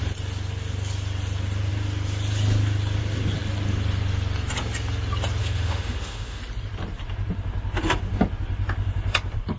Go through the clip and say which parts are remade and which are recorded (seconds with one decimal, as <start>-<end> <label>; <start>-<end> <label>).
0.0-5.4 recorded; 5.4-6.4 remade; 6.4-9.6 recorded